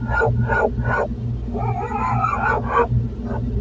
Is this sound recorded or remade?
recorded